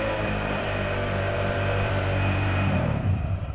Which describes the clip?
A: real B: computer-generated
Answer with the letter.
B